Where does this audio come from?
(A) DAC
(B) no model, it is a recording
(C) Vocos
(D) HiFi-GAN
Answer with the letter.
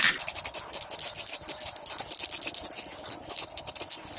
B